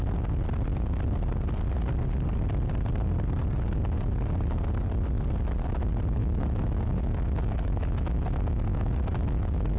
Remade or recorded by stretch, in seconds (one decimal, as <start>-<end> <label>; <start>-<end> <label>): 0.0-6.2 recorded; 6.2-9.8 remade